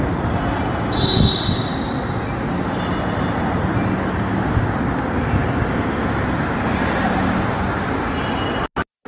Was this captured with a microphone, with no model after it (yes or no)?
yes